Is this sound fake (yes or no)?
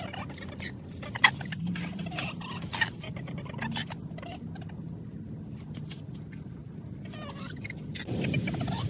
no